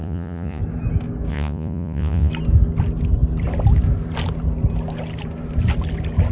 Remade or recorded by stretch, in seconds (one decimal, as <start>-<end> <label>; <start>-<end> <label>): 0.0-0.6 remade; 0.6-1.3 recorded; 1.3-2.3 remade; 2.3-6.3 recorded